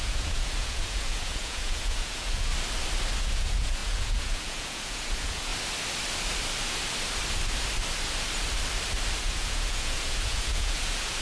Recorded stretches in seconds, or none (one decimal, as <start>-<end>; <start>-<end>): 2.5-3.2; 5.5-9.2